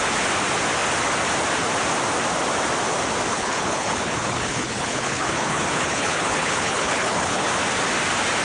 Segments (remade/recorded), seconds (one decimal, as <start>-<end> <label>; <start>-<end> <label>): 0.0-3.3 recorded; 3.3-7.5 remade; 7.5-8.4 recorded